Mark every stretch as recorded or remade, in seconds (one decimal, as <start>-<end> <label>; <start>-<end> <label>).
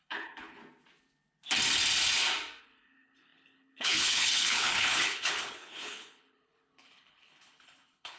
0.0-0.6 remade; 0.6-2.6 recorded; 2.6-8.2 remade